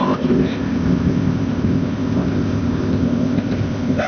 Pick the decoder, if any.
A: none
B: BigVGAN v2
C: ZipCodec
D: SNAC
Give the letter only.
C